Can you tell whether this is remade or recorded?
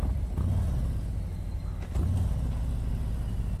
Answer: recorded